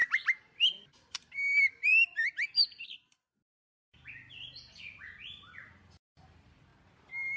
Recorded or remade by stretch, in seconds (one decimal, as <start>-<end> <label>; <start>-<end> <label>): 0.0-6.7 remade; 6.7-7.4 recorded